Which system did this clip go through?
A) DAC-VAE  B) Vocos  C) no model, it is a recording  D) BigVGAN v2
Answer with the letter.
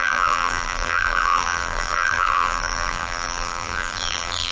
D